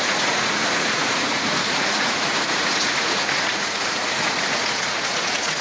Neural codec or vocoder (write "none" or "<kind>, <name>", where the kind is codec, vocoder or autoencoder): vocoder, Vocos